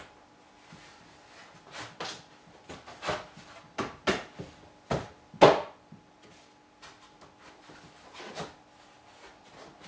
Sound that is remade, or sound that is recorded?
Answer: recorded